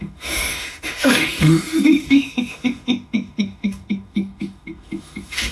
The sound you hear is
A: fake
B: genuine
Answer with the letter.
A